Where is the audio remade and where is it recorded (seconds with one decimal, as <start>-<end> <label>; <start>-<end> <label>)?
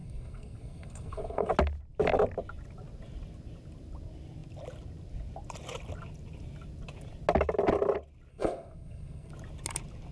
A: 0.0-1.5 remade; 1.5-8.3 recorded; 8.3-9.3 remade; 9.3-10.1 recorded